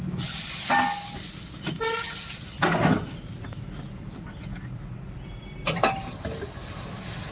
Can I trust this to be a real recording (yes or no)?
yes